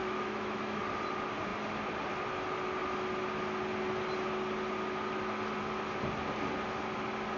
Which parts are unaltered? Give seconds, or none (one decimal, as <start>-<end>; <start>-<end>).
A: 0.8-7.4